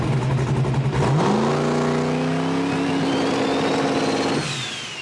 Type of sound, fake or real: real